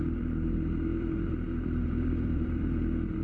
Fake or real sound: fake